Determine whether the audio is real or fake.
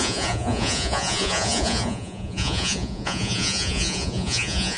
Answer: fake